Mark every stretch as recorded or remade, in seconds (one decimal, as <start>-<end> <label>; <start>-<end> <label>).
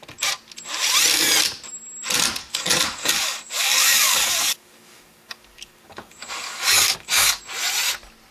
0.0-2.4 recorded; 2.4-7.4 remade; 7.4-8.3 recorded